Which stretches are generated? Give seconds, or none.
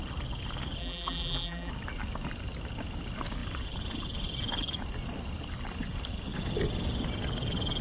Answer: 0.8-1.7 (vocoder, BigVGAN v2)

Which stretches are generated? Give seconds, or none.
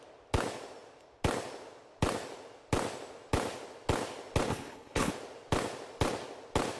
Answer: 4.5-5.1 (codec, HILCodec)